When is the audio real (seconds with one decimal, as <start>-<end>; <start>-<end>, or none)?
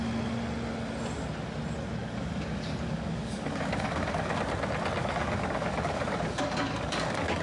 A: 0.0-2.0; 4.4-5.0